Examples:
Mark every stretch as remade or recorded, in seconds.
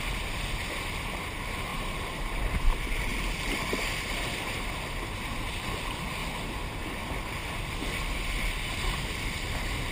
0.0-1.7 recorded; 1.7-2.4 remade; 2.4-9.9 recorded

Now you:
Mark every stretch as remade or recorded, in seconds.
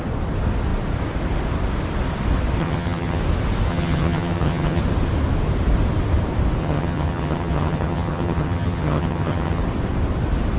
0.0-2.6 recorded; 2.6-3.2 remade; 3.2-3.7 recorded; 3.7-4.8 remade; 4.8-6.6 recorded; 6.6-9.6 remade; 9.6-10.6 recorded